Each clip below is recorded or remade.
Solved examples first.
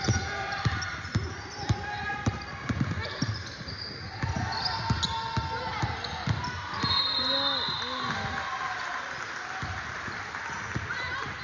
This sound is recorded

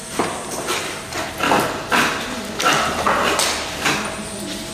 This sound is recorded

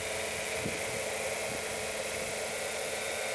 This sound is remade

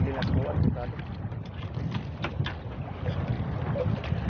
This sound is recorded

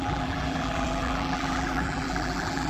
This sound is remade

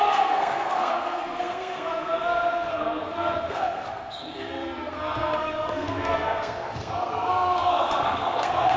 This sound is remade